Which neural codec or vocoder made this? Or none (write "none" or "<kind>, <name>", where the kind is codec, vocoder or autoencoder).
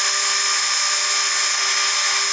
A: none